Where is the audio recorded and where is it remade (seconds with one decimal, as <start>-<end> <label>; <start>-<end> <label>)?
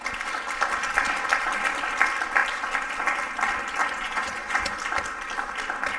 0.0-3.8 recorded; 3.8-4.8 remade; 4.8-6.0 recorded